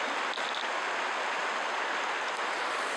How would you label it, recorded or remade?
recorded